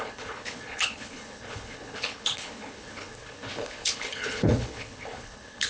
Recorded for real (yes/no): no